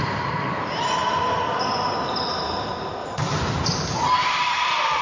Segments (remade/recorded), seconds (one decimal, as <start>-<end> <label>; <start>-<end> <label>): 0.0-5.0 remade